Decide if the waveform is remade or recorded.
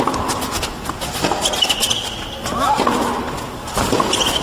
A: recorded